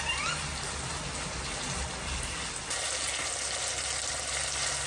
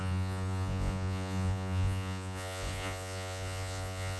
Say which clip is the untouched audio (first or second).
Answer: first